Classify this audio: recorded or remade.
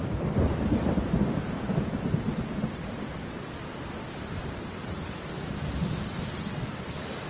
remade